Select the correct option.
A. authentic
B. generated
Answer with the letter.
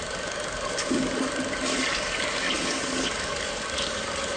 B